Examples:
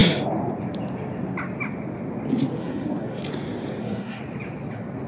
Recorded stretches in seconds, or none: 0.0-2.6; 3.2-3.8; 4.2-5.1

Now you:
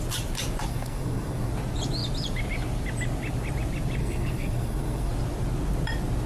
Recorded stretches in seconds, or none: 0.0-0.7; 1.5-4.0; 5.1-6.3

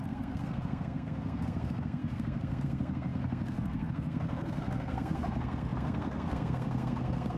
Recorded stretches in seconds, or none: none

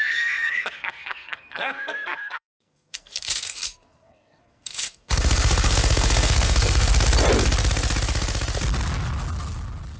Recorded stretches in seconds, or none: 6.9-10.0

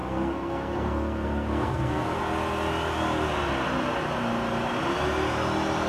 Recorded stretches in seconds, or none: 2.2-5.9

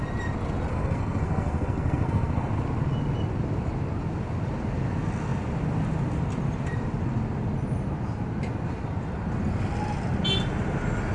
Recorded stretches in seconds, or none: 0.0-0.7; 2.5-11.1

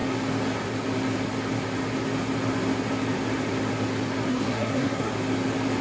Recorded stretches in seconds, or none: 0.0-4.3; 5.1-5.8

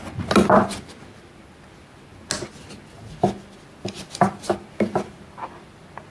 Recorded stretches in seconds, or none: 0.0-6.1